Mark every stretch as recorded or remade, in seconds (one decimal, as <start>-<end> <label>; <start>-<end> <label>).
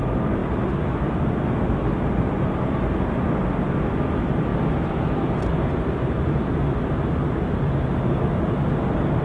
0.0-9.2 recorded